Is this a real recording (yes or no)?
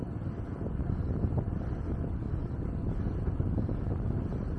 yes